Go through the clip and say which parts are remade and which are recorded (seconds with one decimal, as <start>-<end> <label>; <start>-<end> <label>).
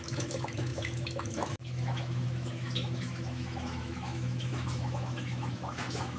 0.0-6.2 remade